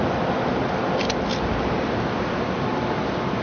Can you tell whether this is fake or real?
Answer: real